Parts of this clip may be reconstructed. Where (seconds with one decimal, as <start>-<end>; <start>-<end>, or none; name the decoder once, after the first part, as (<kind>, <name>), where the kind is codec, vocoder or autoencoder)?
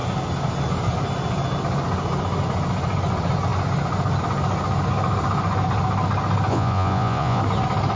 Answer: 6.5-7.4 (vocoder, Vocos)